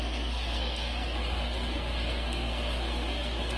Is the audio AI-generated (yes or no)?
yes